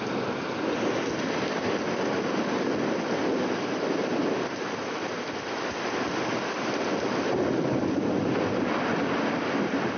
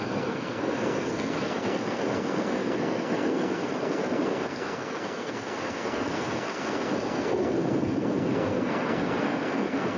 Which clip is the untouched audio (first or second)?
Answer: first